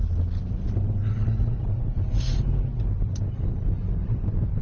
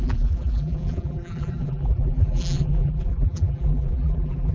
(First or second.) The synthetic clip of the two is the second